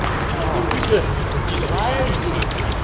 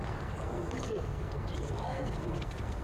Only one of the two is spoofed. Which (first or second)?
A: second